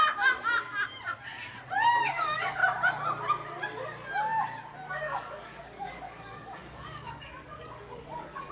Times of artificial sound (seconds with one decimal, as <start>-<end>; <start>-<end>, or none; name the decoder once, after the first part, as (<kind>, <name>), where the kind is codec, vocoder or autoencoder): 2.0-2.6 (codec, DAC); 4.9-8.5